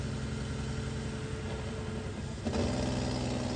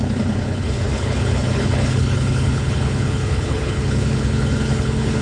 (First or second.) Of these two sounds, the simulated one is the second